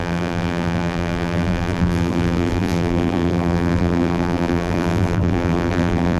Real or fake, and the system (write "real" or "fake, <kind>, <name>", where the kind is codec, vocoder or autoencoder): fake, vocoder, BigVGAN v2